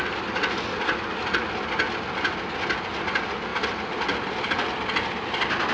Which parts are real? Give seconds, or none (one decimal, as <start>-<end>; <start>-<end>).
0.0-5.7